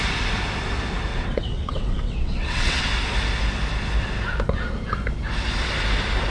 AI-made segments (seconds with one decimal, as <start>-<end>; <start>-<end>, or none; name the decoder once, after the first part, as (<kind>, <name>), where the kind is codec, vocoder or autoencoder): 1.1-2.8 (vocoder, WaveNeXt)